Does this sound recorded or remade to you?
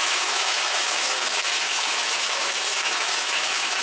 remade